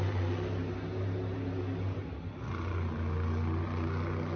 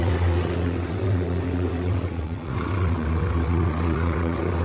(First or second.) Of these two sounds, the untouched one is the first